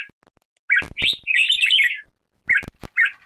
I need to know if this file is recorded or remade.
recorded